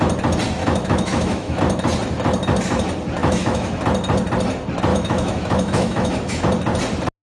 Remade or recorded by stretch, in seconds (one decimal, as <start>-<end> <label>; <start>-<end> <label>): 0.0-0.6 recorded; 0.6-1.6 remade; 1.6-3.2 recorded; 3.2-3.8 remade; 3.8-4.9 recorded; 4.9-6.4 remade; 6.4-7.2 recorded